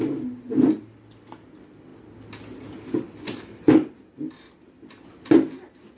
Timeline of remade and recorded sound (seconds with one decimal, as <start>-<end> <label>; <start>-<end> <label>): 0.0-6.0 recorded

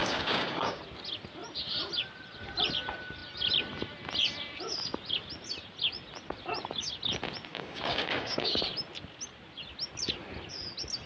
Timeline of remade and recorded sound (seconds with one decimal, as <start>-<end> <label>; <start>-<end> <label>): 0.0-0.8 remade; 0.8-7.5 recorded; 7.5-8.6 remade; 8.6-11.1 recorded